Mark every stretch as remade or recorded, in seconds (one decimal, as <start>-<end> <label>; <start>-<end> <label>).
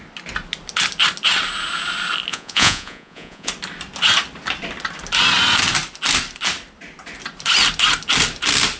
0.0-2.3 recorded; 2.3-3.5 remade; 3.5-8.8 recorded